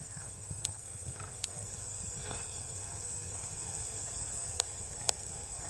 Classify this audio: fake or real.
fake